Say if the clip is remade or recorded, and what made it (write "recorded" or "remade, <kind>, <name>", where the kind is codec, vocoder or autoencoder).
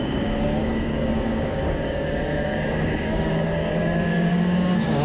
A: remade, codec, DAC